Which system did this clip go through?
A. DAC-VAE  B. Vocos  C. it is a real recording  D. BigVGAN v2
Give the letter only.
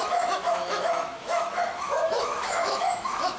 A